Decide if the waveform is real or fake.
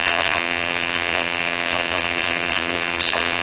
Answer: fake